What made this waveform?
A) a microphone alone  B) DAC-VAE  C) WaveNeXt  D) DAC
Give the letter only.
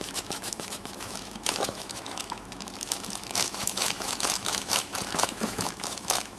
B